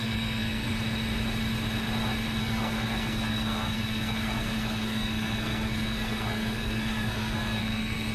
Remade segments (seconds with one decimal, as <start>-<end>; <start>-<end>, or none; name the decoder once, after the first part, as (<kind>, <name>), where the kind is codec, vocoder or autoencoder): 0.0-0.7 (codec, SNAC); 2.4-8.1

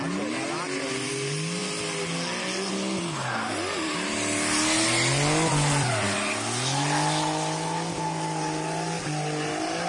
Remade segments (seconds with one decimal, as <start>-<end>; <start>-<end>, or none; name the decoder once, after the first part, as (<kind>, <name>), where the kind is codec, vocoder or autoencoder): none

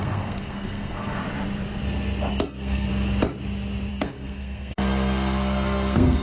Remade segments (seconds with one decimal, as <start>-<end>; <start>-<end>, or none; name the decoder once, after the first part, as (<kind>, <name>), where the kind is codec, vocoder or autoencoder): 0.0-1.2 (codec, SNAC); 2.3-2.9; 3.9-6.2

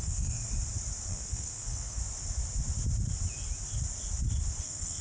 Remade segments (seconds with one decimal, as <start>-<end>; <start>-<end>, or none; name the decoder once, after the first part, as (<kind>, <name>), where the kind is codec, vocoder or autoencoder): 0.0-0.4 (codec, SNAC); 1.1-2.0; 4.6-5.0

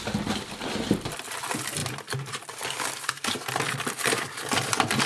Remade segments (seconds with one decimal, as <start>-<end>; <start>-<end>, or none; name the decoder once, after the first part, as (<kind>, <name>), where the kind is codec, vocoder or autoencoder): none

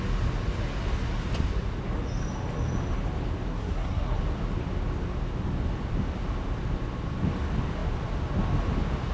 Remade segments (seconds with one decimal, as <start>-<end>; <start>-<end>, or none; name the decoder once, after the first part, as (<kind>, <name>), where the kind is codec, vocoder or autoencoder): 3.5-4.2 (codec, SNAC)

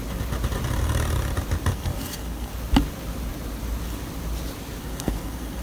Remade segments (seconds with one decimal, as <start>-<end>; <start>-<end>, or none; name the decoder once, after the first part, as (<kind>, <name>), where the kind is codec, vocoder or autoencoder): 1.7-2.5 (codec, SNAC); 4.8-5.6

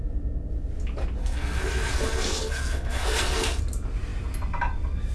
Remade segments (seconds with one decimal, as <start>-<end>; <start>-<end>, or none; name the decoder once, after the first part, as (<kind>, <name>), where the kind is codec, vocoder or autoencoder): 1.2-3.6 (codec, SNAC)